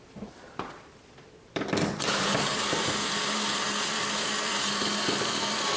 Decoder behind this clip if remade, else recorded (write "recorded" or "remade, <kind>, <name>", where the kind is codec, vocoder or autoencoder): remade, vocoder, BigVGAN v2